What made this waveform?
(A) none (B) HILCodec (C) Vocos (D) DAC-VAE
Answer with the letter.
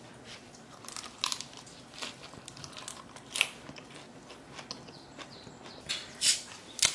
A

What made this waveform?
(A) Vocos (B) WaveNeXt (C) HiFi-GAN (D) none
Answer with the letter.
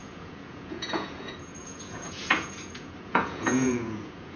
A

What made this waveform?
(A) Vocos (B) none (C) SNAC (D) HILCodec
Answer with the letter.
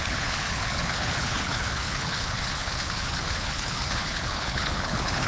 D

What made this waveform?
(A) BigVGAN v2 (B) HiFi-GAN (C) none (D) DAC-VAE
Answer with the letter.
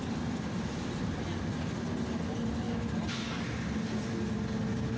C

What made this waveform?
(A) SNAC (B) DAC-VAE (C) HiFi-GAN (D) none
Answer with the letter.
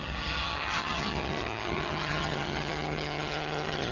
C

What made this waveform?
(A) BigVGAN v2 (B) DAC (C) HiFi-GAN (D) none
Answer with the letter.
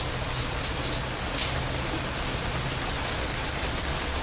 D